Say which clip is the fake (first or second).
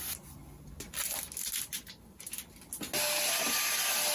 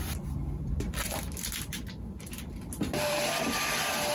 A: second